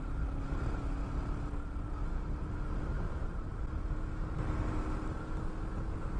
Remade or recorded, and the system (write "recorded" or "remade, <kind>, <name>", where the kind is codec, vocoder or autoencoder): recorded